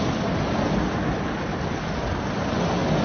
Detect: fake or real real